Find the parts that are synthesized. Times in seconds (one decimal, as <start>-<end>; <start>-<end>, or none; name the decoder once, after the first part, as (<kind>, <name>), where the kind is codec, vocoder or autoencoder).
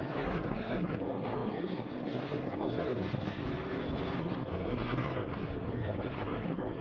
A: 0.0-3.4 (codec, SNAC); 4.2-6.8